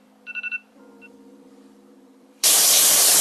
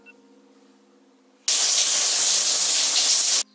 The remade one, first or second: first